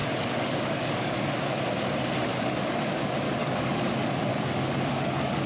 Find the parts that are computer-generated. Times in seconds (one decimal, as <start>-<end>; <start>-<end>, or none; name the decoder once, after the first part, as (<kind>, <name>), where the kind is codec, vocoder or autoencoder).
0.0-1.3 (codec, DAC); 2.3-3.0; 3.4-3.9; 4.3-5.5